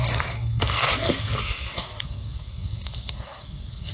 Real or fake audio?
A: fake